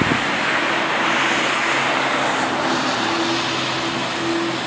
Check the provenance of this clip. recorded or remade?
recorded